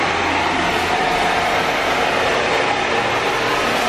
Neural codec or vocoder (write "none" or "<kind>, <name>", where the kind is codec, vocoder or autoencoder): none